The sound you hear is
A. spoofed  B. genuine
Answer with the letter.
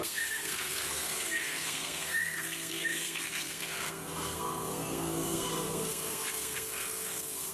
A